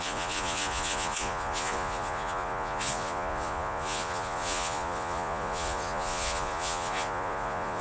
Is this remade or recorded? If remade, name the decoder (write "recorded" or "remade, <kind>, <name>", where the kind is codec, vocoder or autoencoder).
remade, vocoder, Vocos